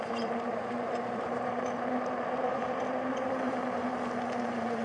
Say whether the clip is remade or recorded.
remade